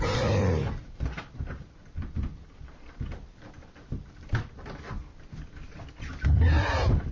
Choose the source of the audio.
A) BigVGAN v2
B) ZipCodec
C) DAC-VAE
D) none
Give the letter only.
D